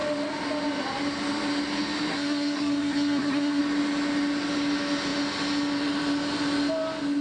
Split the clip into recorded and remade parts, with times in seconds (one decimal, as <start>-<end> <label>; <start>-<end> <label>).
0.0-2.1 recorded; 2.1-3.6 remade; 3.6-7.2 recorded